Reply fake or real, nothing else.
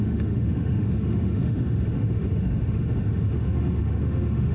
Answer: fake